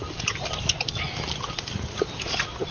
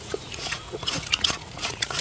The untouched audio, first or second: first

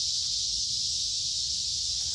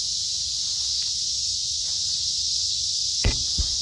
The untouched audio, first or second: first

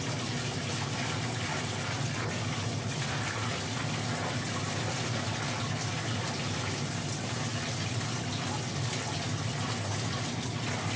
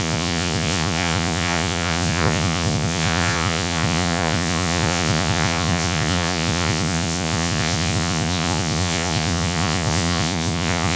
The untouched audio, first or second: first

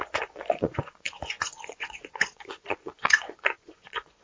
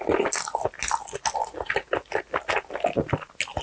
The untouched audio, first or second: second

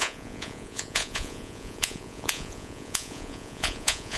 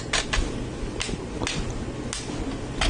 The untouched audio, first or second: second